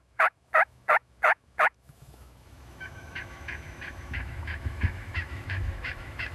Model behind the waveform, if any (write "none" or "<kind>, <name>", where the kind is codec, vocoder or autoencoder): autoencoder, DAC-VAE